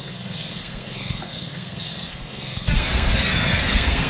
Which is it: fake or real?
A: fake